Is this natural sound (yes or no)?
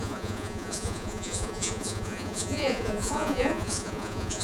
no